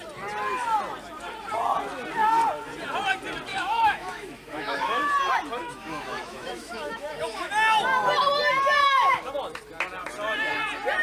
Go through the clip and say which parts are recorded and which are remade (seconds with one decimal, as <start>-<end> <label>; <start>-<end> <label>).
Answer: 0.0-3.5 recorded; 3.5-5.1 remade; 5.1-5.6 recorded; 5.6-7.5 remade; 7.5-8.8 recorded; 8.8-9.3 remade; 9.3-11.0 recorded